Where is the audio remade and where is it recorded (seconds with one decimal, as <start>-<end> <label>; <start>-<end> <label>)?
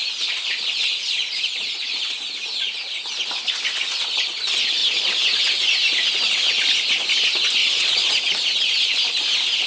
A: 0.0-7.6 recorded; 7.6-8.1 remade; 8.1-9.7 recorded